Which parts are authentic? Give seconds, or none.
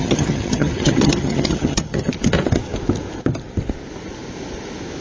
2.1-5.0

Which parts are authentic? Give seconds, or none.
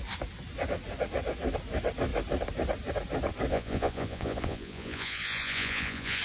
0.0-3.5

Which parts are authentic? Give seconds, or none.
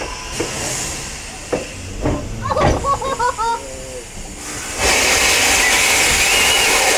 0.0-7.0